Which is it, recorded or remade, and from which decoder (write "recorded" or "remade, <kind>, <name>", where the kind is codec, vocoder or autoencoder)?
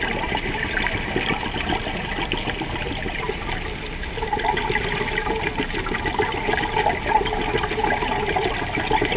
recorded